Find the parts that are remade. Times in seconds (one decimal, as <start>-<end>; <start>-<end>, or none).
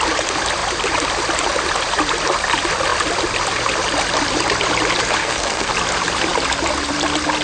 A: 5.2-5.7